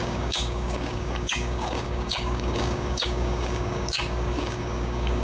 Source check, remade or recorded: remade